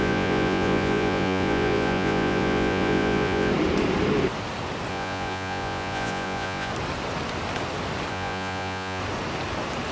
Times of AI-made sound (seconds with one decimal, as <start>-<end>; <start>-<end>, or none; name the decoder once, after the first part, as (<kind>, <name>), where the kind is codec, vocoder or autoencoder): 0.0-3.5 (vocoder, Vocos); 4.9-6.7; 8.1-9.0